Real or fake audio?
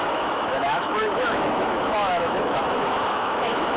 fake